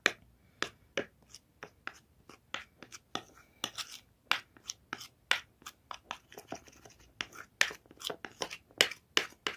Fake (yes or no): no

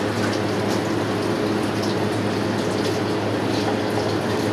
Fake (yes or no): no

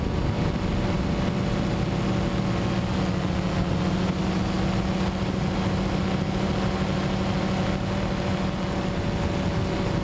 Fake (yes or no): no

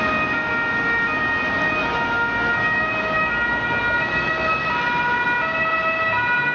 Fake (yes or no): no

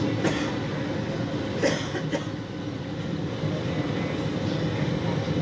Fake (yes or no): no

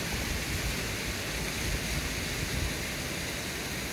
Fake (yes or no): no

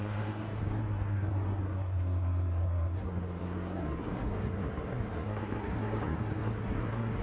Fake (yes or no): yes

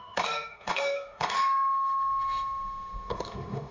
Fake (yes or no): yes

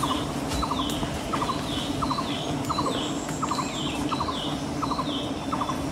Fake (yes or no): no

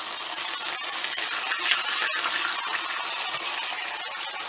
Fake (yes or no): no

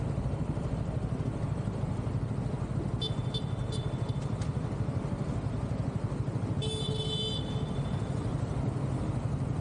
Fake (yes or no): no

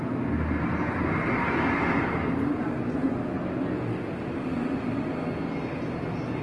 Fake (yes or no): no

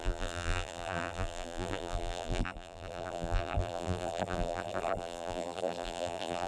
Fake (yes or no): yes